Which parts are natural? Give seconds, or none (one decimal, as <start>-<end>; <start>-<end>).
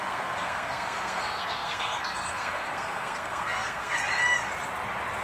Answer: 4.0-5.2